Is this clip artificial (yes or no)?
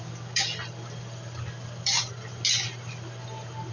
no